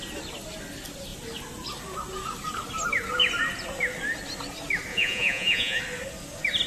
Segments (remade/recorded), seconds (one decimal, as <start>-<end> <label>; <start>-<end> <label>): 0.0-4.9 recorded; 4.9-5.8 remade; 5.8-6.7 recorded